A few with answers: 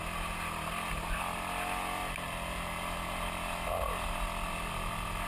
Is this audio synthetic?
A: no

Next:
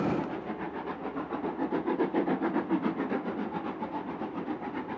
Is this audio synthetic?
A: no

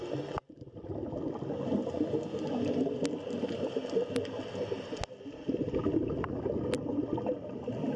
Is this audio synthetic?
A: no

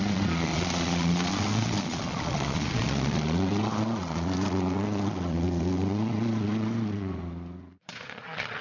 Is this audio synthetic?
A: yes